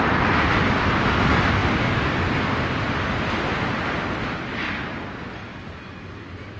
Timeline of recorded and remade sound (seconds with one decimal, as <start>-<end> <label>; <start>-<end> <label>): 0.0-6.6 recorded